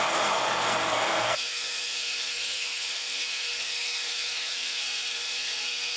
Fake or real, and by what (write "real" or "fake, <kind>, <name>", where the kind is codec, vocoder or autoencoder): fake, codec, SNAC